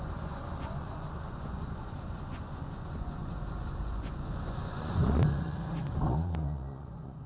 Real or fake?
fake